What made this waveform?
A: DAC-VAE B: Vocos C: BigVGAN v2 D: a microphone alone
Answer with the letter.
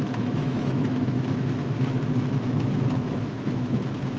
A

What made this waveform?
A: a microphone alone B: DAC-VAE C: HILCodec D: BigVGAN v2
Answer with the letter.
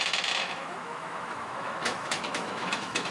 B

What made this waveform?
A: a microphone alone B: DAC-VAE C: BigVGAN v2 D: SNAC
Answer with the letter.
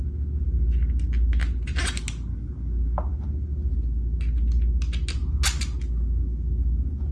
A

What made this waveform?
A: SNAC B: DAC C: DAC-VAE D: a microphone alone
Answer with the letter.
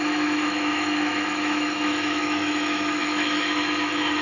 C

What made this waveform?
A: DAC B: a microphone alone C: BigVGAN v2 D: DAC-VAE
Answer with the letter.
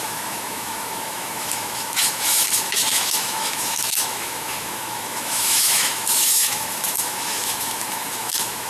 D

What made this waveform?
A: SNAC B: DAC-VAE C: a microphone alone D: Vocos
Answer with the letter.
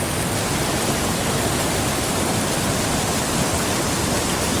C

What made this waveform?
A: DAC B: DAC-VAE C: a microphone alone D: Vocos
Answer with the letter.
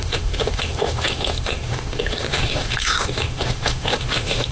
B